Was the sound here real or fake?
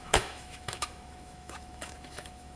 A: fake